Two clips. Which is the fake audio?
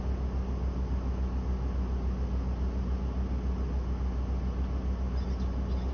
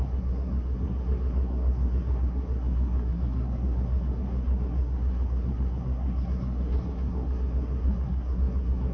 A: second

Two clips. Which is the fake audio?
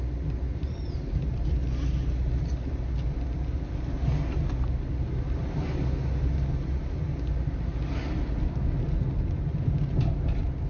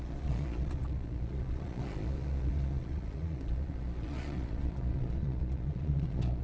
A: second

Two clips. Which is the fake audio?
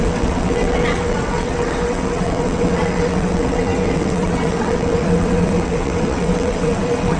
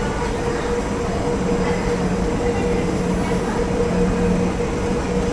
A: first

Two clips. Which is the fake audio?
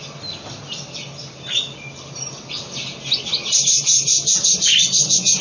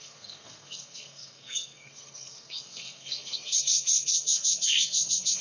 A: second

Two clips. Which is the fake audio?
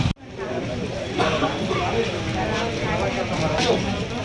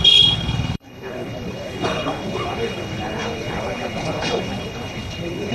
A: second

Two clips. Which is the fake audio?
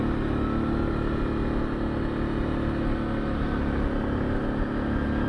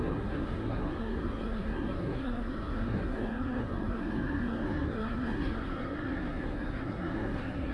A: second